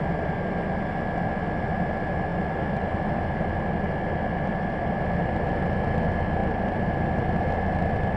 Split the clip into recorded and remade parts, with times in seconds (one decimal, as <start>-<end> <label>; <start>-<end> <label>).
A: 0.0-2.3 recorded; 2.3-5.5 remade; 5.5-6.4 recorded; 6.4-8.2 remade